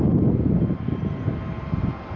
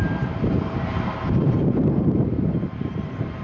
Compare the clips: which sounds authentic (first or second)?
first